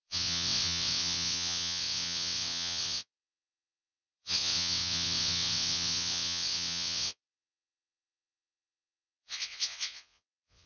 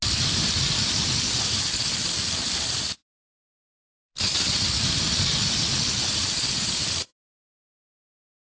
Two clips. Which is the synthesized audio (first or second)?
first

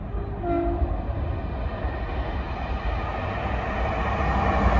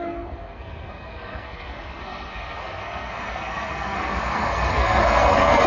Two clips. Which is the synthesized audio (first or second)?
second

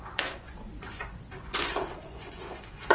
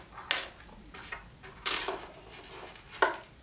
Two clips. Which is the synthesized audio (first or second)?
first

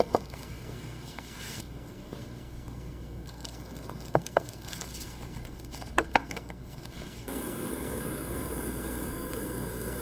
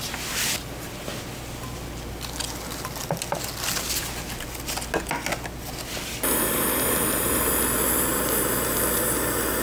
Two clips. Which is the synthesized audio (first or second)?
first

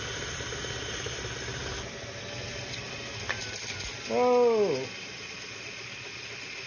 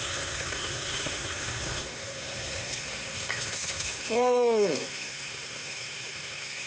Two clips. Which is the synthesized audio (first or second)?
second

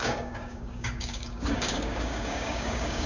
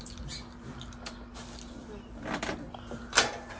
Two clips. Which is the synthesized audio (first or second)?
first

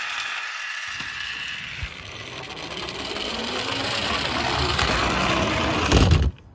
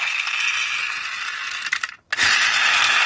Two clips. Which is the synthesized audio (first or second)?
first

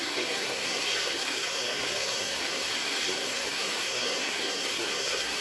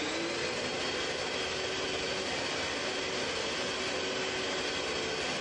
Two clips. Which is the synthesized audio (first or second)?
first